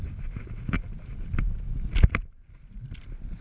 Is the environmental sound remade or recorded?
recorded